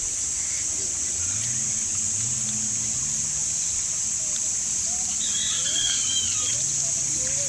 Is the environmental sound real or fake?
real